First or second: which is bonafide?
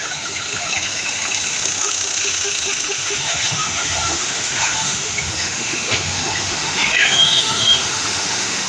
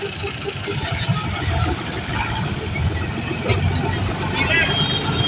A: second